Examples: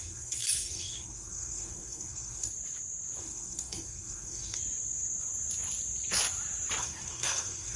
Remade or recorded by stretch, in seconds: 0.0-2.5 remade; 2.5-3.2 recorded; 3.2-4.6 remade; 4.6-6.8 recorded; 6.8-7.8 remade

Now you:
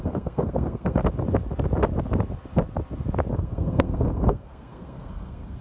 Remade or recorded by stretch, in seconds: 0.0-1.0 remade; 1.0-3.3 recorded; 3.3-5.6 remade

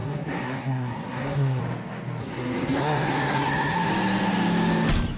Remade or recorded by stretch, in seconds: 0.0-1.6 remade; 1.6-2.2 recorded; 2.2-3.9 remade; 3.9-5.2 recorded

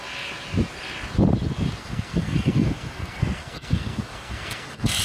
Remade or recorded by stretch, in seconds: 0.0-1.8 recorded; 1.8-5.0 remade

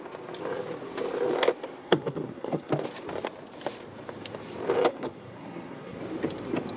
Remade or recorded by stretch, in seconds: 0.0-1.8 recorded; 1.8-2.7 remade; 2.7-4.9 recorded; 4.9-6.0 remade; 6.0-6.8 recorded